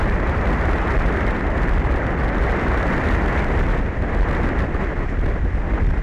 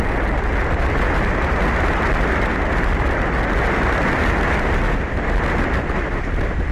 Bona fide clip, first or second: second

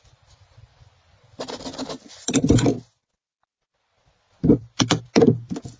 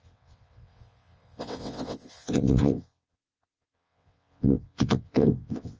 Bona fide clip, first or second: first